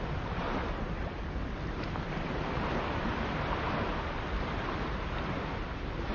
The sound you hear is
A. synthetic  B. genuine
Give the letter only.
B